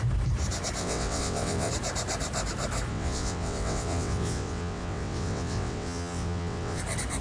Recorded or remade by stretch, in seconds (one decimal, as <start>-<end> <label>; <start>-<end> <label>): 0.0-0.8 recorded; 0.8-1.7 remade; 1.7-2.9 recorded; 2.9-6.8 remade; 6.8-7.2 recorded